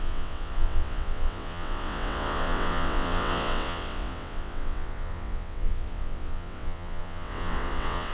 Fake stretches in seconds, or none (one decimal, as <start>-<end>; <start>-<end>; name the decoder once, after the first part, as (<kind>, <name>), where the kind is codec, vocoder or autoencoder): 0.0-8.1 (vocoder, WaveNeXt)